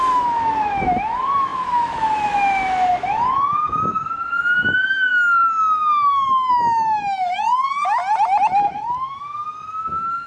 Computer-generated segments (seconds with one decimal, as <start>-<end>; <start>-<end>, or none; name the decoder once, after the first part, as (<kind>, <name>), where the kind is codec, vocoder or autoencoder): 0.0-8.0 (autoencoder, DAC-VAE); 8.7-10.3